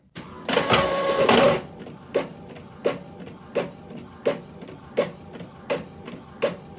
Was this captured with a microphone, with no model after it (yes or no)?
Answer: yes